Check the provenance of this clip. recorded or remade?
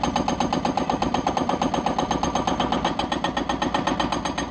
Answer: recorded